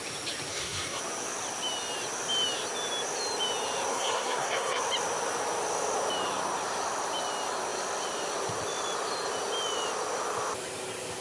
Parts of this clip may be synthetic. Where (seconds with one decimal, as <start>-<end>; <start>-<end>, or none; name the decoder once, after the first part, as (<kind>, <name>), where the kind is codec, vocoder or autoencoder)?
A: 0.5-1.0 (codec, SNAC); 3.9-4.8